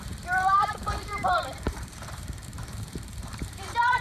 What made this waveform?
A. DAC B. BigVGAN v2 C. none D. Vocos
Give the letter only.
B